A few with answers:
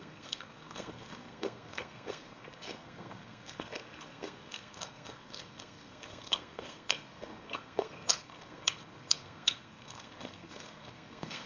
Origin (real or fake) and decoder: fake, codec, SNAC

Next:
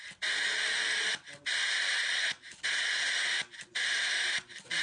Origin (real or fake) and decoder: real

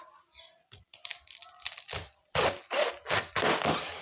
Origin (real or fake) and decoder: real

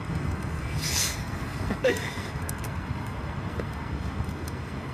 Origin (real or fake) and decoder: fake, codec, SNAC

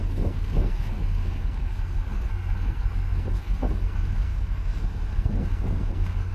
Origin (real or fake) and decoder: fake, codec, SNAC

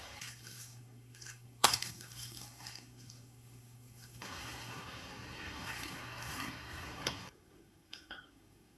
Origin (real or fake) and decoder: fake, codec, SNAC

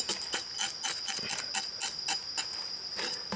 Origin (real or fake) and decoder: real